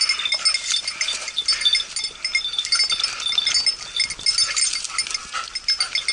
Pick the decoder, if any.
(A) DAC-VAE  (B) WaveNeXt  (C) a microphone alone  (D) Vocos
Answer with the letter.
C